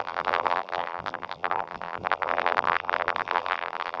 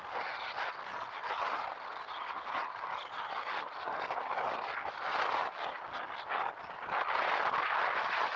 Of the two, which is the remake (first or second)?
first